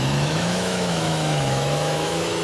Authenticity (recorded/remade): remade